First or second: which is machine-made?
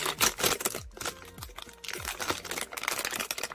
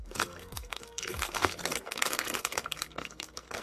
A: second